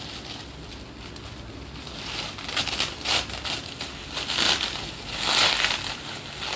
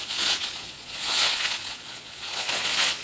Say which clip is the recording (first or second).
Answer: first